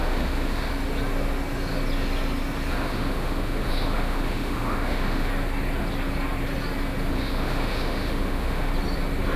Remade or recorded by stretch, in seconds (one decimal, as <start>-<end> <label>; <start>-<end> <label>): 0.0-0.7 remade; 0.7-2.7 recorded; 2.7-5.3 remade; 5.3-7.1 recorded; 7.1-8.7 remade; 8.7-9.4 recorded